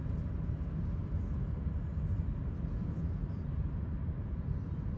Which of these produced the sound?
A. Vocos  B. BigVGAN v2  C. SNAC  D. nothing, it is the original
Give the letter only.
D